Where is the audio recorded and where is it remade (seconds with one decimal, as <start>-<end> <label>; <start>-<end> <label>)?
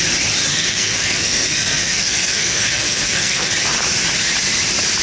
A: 0.0-0.5 recorded; 0.5-3.5 remade; 3.5-5.0 recorded